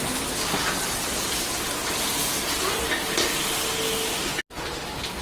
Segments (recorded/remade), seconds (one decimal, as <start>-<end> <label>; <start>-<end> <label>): 0.0-5.2 recorded